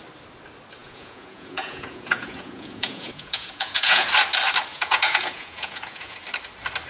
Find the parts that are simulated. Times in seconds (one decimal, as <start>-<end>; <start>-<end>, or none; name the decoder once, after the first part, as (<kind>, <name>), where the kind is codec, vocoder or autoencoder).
0.8-4.1 (vocoder, Vocos); 4.7-6.2